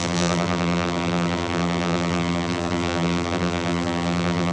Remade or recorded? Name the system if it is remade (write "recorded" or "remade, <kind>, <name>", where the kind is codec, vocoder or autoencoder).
remade, vocoder, BigVGAN v2